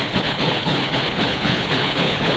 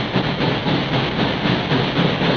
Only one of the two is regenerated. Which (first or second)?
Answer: first